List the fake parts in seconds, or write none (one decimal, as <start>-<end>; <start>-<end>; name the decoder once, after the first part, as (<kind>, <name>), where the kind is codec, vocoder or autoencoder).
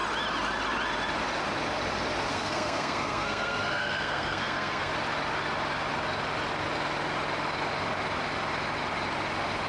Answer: 2.3-4.9 (codec, SNAC)